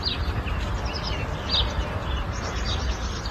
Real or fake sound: real